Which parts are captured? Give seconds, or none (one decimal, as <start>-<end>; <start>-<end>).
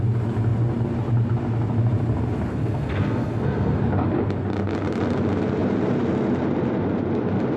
0.0-2.5; 3.8-7.6